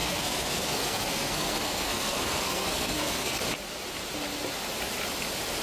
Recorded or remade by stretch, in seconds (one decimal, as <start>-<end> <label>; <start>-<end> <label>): 0.0-3.4 remade; 3.4-5.6 recorded